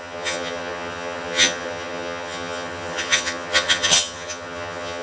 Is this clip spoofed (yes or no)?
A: yes